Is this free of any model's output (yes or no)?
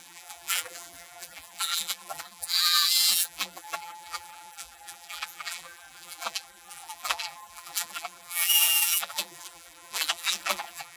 no